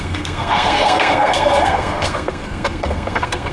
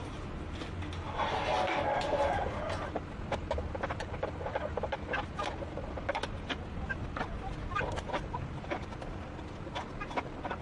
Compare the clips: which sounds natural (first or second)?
second